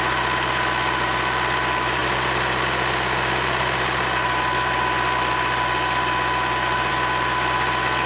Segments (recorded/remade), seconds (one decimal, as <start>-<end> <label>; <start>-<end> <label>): 0.0-8.1 recorded